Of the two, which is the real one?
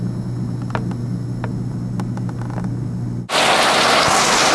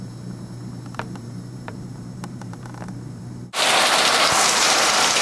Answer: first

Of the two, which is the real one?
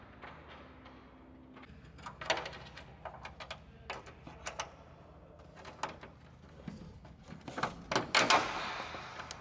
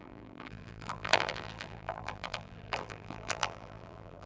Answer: first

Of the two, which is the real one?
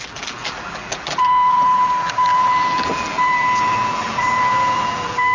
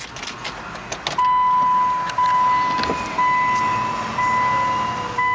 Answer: second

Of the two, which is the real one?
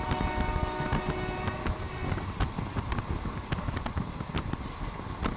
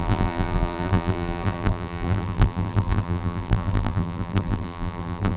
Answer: first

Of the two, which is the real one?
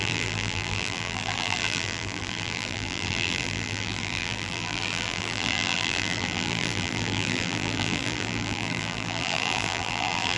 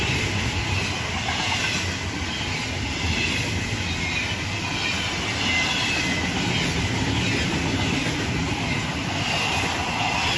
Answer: second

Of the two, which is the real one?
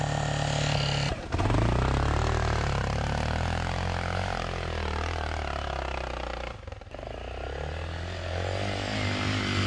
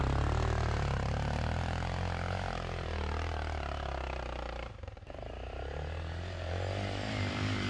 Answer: first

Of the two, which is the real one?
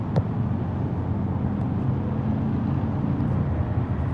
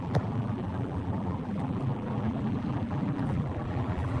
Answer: first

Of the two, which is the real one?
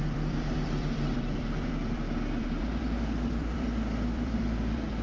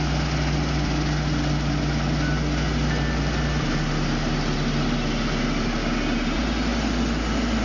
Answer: second